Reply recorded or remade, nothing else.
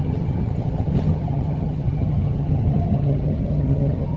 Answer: remade